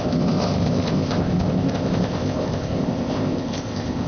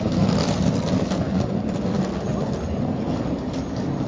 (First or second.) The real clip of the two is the second